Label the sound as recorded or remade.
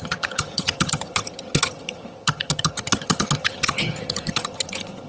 remade